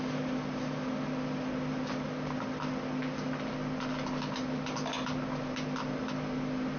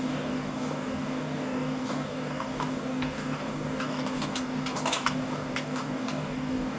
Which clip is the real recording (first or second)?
first